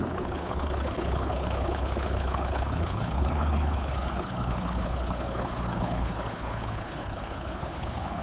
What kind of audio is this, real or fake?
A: fake